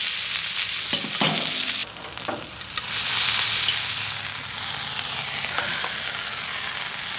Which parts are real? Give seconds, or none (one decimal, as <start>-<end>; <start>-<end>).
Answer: 0.0-1.8; 3.5-7.2